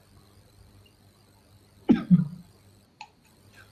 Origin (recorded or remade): recorded